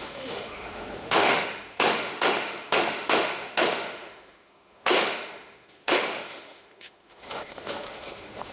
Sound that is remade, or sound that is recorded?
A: remade